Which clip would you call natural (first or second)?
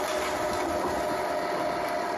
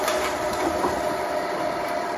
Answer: first